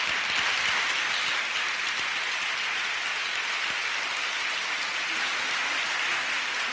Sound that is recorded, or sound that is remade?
recorded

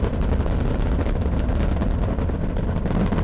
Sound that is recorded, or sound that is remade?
recorded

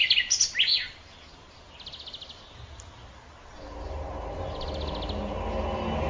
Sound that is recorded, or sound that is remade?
recorded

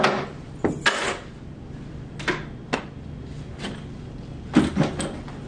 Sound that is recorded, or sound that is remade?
recorded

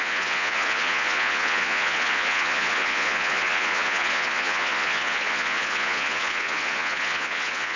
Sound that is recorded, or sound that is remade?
remade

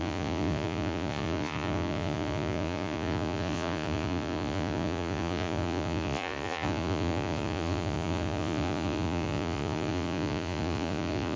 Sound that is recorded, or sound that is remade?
remade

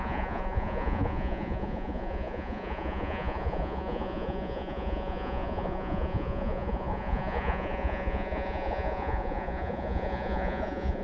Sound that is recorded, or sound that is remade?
remade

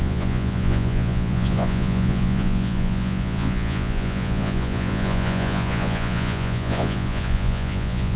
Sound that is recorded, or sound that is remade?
remade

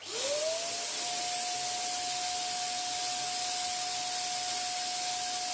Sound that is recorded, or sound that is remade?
recorded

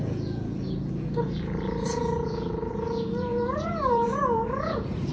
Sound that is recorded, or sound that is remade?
remade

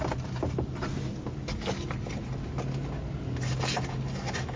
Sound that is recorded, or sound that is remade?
recorded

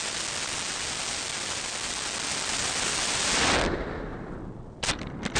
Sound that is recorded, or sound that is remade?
recorded